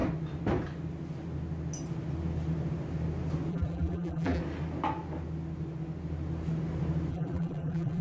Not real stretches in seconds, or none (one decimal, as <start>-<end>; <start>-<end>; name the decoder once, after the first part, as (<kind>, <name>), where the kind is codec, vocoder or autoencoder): 3.5-4.4 (vocoder, BigVGAN v2); 7.1-8.0

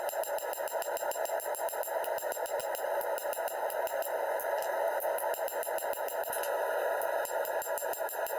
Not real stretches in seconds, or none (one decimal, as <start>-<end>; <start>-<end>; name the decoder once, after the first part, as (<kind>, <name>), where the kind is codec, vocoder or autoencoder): none

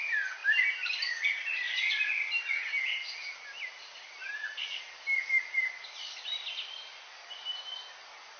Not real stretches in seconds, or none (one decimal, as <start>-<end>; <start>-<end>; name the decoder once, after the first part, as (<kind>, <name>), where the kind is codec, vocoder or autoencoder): none

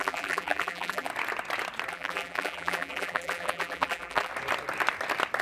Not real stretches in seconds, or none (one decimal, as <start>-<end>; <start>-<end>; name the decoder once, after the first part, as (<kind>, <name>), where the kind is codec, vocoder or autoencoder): 0.0-1.1 (vocoder, BigVGAN v2); 1.9-4.3